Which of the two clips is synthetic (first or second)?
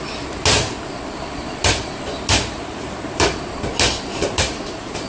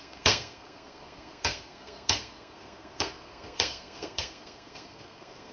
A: second